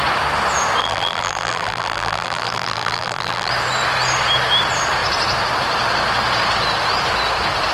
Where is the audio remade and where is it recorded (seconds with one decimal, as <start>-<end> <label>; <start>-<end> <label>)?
0.0-0.8 recorded; 0.8-3.5 remade; 3.5-7.7 recorded